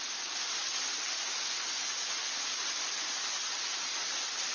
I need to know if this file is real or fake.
real